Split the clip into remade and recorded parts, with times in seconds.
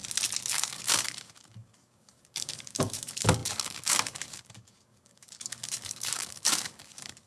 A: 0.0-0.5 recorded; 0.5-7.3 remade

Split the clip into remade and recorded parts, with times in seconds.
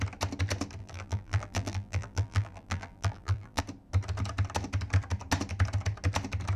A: 0.0-0.8 recorded; 0.8-3.6 remade; 3.6-6.6 recorded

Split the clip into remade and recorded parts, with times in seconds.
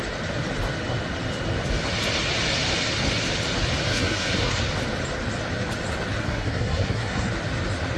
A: 0.0-3.9 recorded; 3.9-4.6 remade; 4.6-6.2 recorded; 6.2-7.3 remade; 7.3-8.0 recorded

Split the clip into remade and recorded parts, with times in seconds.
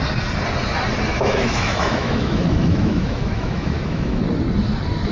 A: 0.0-1.1 recorded; 1.1-4.2 remade; 4.2-5.1 recorded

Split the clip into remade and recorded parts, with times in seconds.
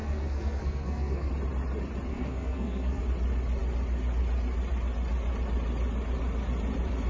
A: 0.0-1.3 remade; 1.3-2.1 recorded; 2.1-3.0 remade; 3.0-7.1 recorded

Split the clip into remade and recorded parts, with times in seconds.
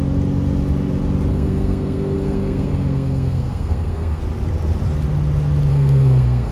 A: 0.0-1.3 recorded; 1.3-4.2 remade; 4.2-5.7 recorded; 5.7-6.5 remade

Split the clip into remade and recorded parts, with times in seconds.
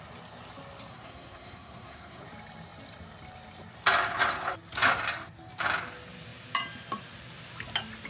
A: 0.0-0.9 recorded; 0.9-2.2 remade; 2.2-8.1 recorded